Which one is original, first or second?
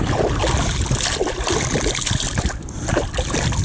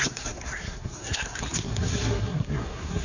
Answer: first